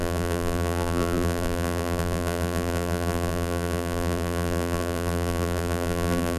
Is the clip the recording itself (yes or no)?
no